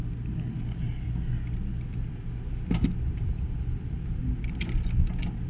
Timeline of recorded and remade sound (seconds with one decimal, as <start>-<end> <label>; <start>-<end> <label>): 0.0-0.9 recorded; 0.9-4.2 remade; 4.2-5.5 recorded